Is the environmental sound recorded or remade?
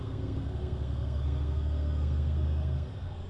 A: remade